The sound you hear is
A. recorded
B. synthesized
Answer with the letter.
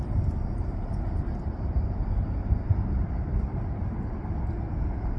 B